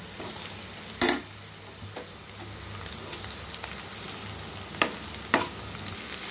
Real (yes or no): yes